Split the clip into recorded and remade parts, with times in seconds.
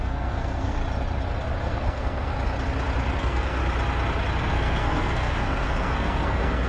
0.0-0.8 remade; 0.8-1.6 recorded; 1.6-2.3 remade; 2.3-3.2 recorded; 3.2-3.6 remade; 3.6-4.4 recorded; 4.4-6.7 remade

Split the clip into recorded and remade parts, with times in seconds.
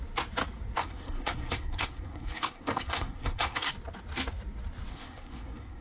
0.0-0.8 recorded; 0.8-3.7 remade; 3.7-4.9 recorded; 4.9-5.8 remade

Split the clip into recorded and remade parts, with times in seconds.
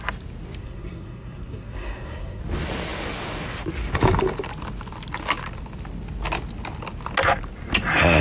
0.0-0.6 recorded; 0.6-2.4 remade; 2.4-8.2 recorded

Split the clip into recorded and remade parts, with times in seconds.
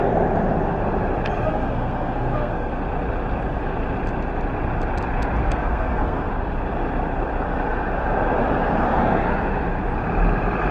0.0-1.5 recorded; 1.5-2.7 remade; 2.7-5.4 recorded; 5.4-6.3 remade; 6.3-10.7 recorded